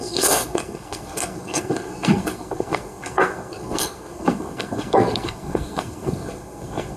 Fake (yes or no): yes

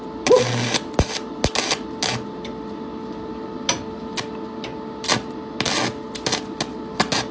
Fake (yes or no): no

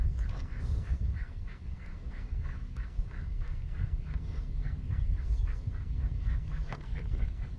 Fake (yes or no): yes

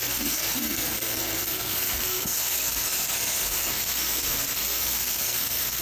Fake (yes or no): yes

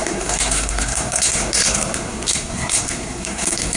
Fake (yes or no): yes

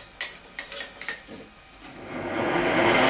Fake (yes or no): no